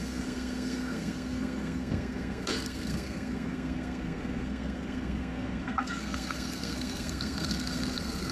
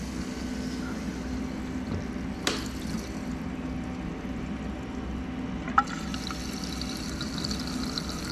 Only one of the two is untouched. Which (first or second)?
second